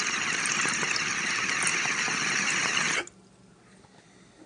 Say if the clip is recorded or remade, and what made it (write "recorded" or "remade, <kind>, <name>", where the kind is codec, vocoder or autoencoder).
recorded